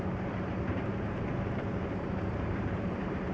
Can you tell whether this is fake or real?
fake